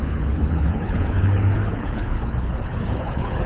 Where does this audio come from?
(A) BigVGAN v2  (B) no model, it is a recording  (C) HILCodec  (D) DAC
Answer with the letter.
C